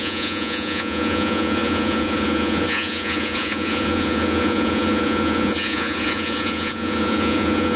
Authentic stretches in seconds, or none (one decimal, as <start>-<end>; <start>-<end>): none